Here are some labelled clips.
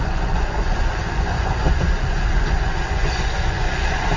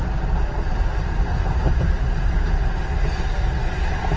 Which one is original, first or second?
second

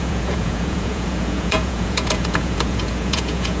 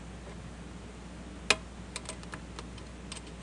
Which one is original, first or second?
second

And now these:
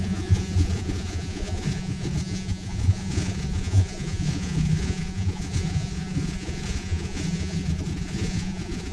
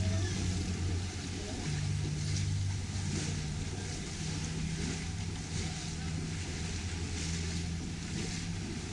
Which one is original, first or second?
second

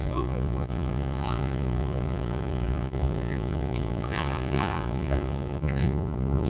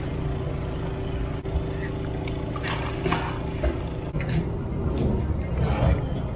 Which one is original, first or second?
second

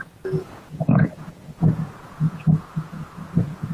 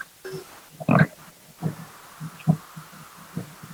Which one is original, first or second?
second